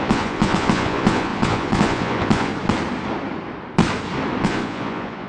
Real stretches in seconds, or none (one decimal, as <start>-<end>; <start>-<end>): 2.5-4.4